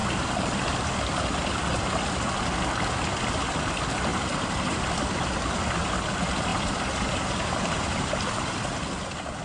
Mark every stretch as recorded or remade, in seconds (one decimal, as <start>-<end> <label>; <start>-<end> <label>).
0.0-4.1 recorded; 4.1-4.8 remade; 4.8-6.5 recorded; 6.5-8.7 remade; 8.7-9.4 recorded

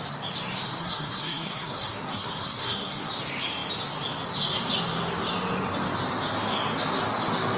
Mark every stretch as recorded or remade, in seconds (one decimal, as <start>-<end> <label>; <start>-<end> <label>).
0.0-0.8 recorded; 0.8-3.1 remade; 3.1-7.6 recorded

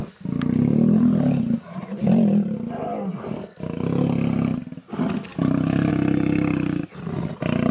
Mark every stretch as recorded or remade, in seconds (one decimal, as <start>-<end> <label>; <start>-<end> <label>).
0.0-7.7 recorded

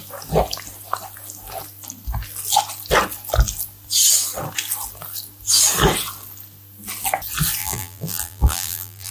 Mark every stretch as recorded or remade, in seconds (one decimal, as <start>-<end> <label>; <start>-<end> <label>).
0.0-7.6 recorded; 7.6-9.1 remade

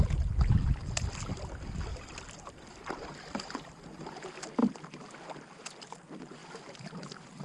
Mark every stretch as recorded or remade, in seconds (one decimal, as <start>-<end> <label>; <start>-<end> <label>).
0.0-1.9 recorded; 1.9-3.8 remade; 3.8-6.4 recorded; 6.4-7.4 remade